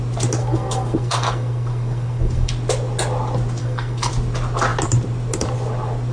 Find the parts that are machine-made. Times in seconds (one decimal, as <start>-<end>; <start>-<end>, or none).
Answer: 0.4-2.5; 3.6-4.1